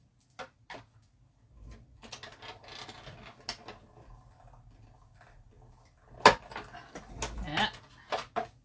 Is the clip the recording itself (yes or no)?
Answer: yes